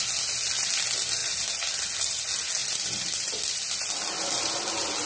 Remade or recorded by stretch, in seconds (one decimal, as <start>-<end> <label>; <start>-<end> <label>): 0.0-5.1 recorded